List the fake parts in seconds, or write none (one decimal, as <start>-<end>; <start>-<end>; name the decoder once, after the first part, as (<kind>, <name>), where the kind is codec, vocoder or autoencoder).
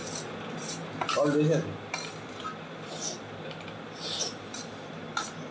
none